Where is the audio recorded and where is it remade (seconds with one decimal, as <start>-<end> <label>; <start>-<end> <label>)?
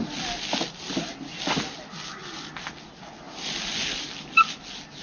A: 0.0-5.0 recorded